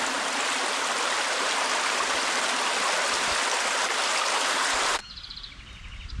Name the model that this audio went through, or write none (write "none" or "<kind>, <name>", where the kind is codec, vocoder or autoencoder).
none